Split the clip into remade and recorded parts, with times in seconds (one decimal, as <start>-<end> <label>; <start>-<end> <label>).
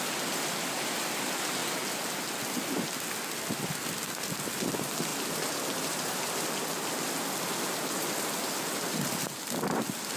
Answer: 0.0-10.2 recorded